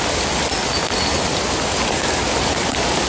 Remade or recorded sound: recorded